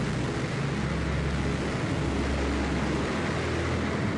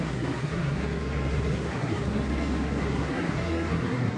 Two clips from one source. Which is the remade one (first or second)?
second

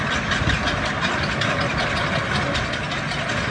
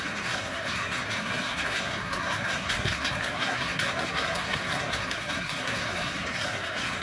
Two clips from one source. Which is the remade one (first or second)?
second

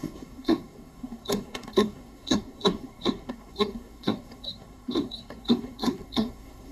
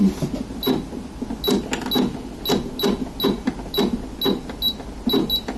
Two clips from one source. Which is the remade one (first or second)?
first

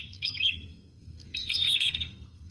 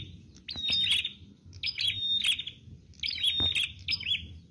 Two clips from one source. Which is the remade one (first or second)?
first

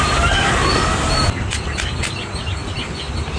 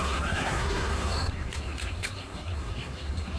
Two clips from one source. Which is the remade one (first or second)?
second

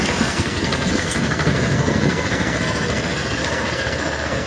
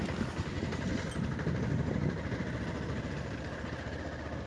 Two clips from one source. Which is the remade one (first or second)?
first